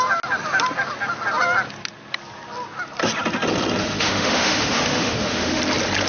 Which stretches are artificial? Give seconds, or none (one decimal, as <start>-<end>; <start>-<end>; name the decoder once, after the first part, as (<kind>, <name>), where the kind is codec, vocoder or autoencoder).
3.8-5.6 (autoencoder, DAC-VAE)